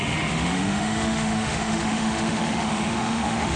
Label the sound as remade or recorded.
remade